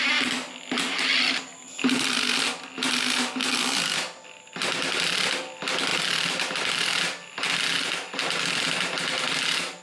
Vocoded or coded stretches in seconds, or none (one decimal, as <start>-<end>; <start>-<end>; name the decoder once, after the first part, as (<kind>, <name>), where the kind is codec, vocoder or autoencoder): 3.4-4.5 (vocoder, BigVGAN v2)